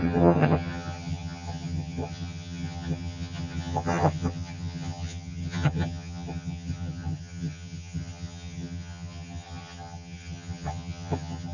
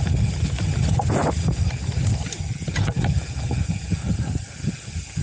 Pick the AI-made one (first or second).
first